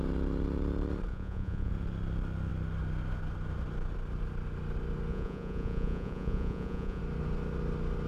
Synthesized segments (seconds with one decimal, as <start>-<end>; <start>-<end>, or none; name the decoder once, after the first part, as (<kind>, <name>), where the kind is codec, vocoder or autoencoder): 1.1-1.7 (vocoder, Vocos); 5.1-7.0